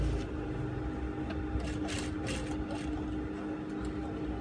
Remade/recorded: recorded